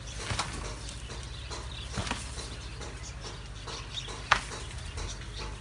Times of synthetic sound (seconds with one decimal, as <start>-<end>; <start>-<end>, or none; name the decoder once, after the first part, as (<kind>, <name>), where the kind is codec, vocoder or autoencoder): none